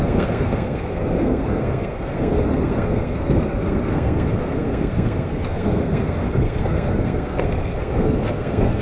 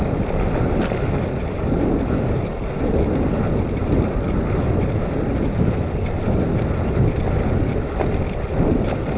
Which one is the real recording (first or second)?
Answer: second